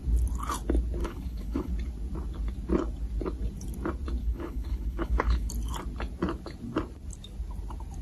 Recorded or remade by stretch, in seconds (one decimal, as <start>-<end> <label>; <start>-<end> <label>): 0.0-1.0 recorded; 1.0-1.7 remade; 1.7-4.2 recorded; 4.2-5.5 remade; 5.5-8.0 recorded